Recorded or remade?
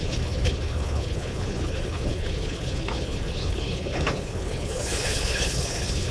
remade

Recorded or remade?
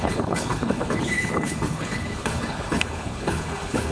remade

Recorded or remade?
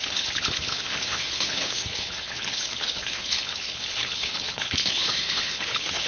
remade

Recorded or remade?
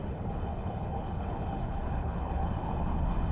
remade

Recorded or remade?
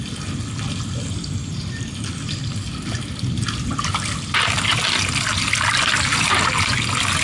recorded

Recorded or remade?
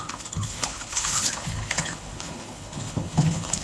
remade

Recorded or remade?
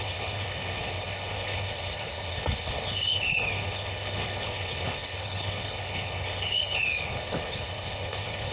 remade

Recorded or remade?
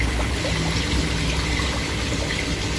recorded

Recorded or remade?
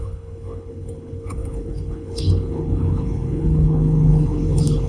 remade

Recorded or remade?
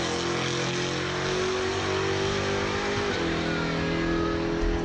recorded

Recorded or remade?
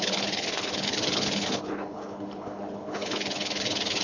remade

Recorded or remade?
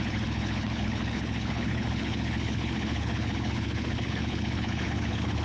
remade